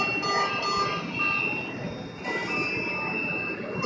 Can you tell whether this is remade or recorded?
recorded